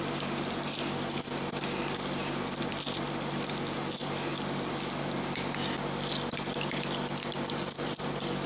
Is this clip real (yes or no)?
yes